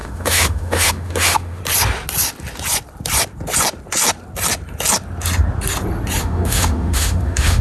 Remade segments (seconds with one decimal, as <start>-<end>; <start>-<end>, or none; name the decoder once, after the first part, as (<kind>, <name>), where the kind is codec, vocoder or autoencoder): 0.0-1.6 (autoencoder, DAC-VAE); 6.2-7.6